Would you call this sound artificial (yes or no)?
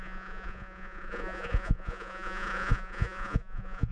yes